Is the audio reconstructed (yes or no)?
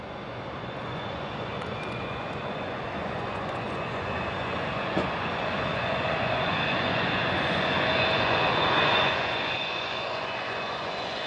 yes